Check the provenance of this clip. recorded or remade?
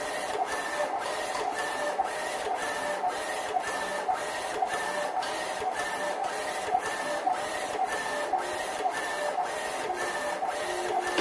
recorded